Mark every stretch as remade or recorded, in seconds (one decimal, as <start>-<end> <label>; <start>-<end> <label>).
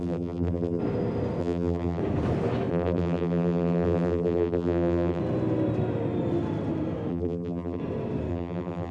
0.0-0.8 remade; 0.8-1.4 recorded; 1.4-2.0 remade; 2.0-2.7 recorded; 2.7-5.2 remade; 5.2-7.1 recorded; 7.1-7.8 remade; 7.8-8.3 recorded; 8.3-8.9 remade